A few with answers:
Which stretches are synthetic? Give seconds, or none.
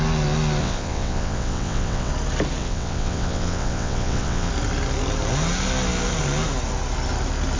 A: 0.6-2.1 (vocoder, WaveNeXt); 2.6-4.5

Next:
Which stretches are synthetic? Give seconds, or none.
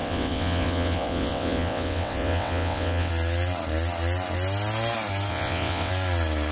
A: 0.0-3.1 (vocoder, WaveNeXt); 5.3-5.9